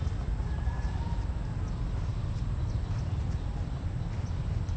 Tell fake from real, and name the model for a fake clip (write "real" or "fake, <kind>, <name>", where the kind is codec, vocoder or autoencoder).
real